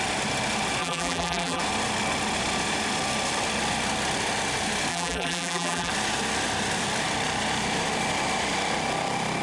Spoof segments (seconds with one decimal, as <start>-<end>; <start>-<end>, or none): 0.8-1.6; 4.9-5.9